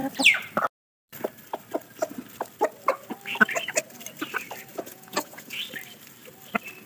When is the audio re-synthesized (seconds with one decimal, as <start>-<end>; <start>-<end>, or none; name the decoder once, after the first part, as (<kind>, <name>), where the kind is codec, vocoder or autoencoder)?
4.7-5.6 (vocoder, Vocos)